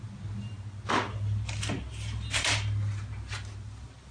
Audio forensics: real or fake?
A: real